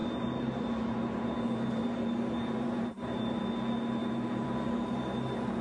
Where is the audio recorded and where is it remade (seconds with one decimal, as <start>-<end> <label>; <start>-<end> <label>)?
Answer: 0.0-3.4 remade; 3.4-4.0 recorded; 4.0-5.6 remade